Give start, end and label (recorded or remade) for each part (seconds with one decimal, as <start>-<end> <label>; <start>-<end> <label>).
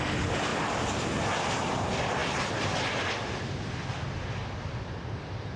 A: 0.0-5.6 recorded